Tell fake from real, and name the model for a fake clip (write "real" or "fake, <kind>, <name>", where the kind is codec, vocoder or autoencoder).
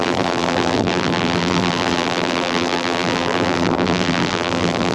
fake, vocoder, BigVGAN v2